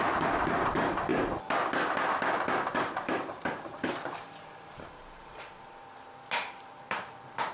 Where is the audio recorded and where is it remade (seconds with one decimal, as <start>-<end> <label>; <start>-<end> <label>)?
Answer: 0.0-1.1 remade; 1.1-2.7 recorded; 2.7-7.5 remade